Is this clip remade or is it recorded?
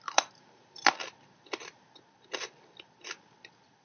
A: remade